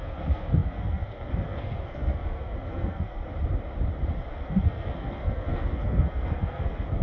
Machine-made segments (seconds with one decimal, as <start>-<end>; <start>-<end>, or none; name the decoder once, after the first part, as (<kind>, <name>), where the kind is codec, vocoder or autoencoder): 0.0-3.2 (codec, SNAC); 4.3-7.0